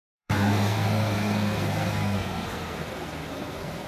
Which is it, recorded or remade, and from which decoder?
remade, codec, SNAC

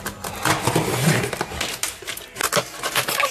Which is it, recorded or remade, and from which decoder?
recorded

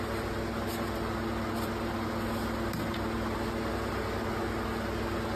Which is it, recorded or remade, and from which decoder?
recorded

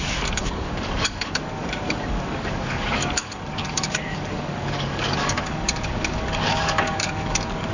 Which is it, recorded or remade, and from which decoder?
remade, codec, DAC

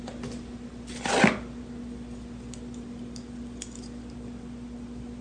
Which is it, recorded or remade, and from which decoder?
recorded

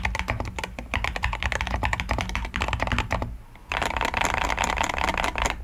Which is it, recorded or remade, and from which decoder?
recorded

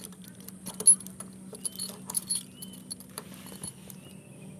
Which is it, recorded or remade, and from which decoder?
recorded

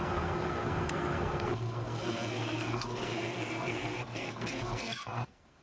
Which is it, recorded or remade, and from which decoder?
remade, codec, SNAC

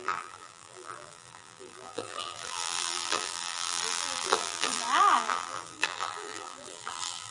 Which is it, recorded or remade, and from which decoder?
remade, vocoder, BigVGAN v2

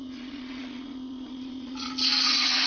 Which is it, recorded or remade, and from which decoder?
remade, vocoder, Vocos